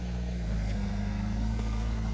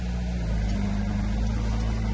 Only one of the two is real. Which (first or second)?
second